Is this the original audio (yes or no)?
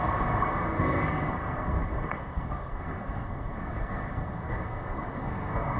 no